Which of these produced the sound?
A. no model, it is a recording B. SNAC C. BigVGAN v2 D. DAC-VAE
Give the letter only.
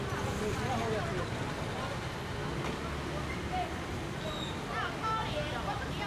A